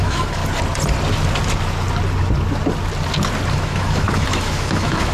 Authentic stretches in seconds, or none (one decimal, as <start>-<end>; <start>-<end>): 0.4-3.5